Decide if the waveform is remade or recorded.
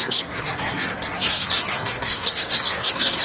remade